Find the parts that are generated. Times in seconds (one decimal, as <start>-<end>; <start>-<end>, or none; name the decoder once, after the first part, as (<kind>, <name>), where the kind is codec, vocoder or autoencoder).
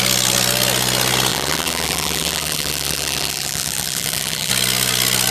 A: 1.3-4.5 (vocoder, BigVGAN v2)